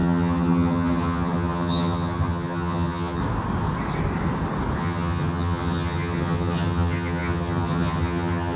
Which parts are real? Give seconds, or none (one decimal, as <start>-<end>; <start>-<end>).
3.2-4.8